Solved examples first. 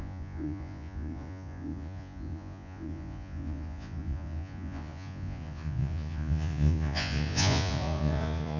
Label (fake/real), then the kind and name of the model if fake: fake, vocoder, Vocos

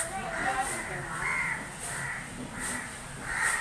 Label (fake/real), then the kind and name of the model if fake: real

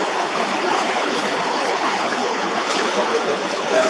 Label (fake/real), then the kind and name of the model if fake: fake, codec, HILCodec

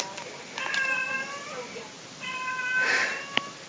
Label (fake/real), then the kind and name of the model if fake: real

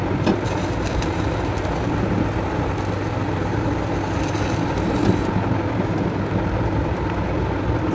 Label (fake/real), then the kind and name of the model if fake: real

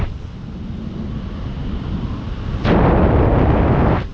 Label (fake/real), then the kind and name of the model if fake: real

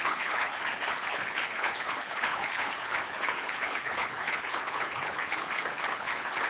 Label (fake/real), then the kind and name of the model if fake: fake, codec, HILCodec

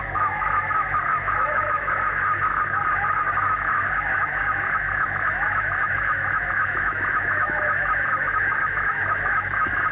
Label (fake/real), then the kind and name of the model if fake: fake, autoencoder, DAC-VAE